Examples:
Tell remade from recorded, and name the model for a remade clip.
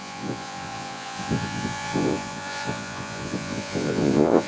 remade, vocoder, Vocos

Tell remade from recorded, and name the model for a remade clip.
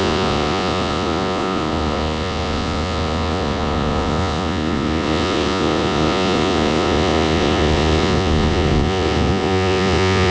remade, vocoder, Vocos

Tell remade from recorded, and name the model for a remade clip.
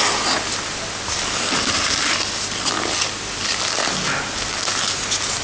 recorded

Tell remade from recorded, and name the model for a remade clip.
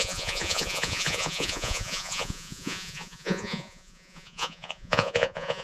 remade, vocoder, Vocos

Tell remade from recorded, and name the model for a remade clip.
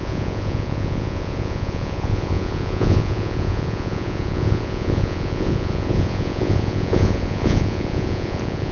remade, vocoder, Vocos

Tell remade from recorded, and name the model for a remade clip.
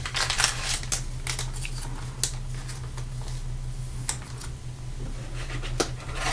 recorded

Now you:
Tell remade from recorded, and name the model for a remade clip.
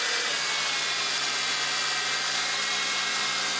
recorded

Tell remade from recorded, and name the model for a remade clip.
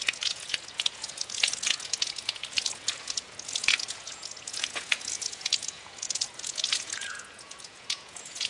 remade, vocoder, Vocos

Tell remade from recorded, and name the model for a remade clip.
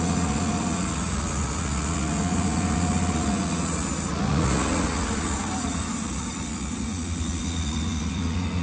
remade, vocoder, Vocos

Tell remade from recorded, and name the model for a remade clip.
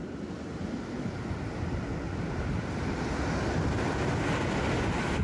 recorded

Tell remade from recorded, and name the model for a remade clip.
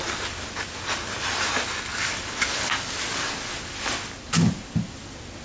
recorded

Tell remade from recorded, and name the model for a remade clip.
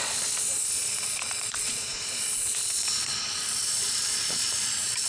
remade, vocoder, Vocos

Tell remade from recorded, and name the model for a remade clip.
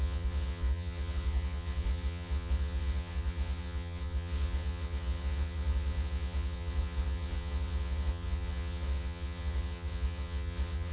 remade, vocoder, Vocos